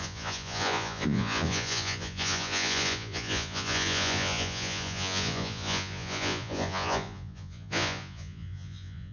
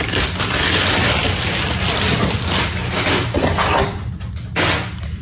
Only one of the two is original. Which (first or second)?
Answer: second